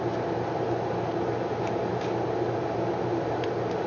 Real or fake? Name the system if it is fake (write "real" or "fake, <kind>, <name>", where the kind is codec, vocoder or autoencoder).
real